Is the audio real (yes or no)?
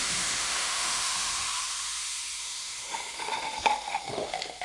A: no